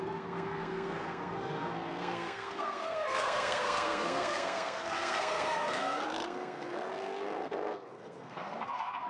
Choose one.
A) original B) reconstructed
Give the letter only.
B